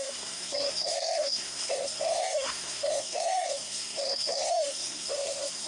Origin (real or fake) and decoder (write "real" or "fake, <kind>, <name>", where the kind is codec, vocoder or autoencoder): fake, codec, SNAC